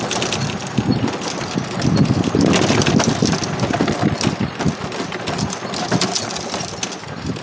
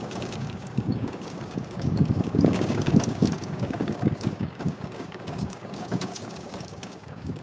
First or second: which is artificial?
second